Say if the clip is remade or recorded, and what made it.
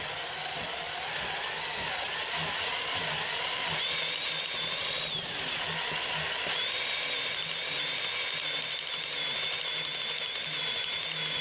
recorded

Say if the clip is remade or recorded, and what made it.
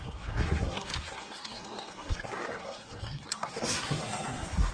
remade, codec, SNAC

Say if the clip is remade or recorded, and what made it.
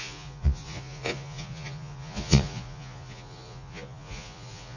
remade, vocoder, Vocos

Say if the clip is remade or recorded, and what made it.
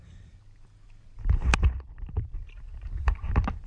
recorded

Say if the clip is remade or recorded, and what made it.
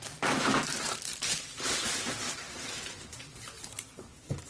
remade, vocoder, BigVGAN v2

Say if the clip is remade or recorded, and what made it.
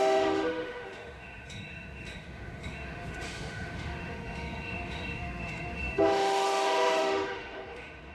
remade, autoencoder, DAC-VAE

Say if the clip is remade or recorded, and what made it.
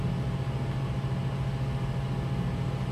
recorded